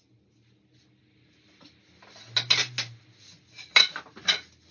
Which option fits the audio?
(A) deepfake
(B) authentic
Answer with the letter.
B